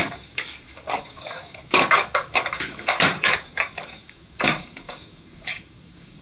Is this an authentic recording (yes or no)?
no